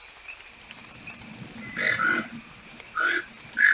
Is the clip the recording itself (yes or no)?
yes